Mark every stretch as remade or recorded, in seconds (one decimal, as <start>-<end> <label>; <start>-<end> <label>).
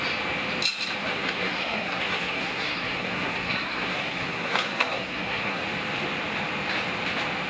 0.0-1.1 recorded; 1.1-5.6 remade; 5.6-7.5 recorded